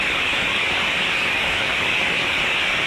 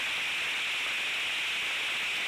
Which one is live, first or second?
second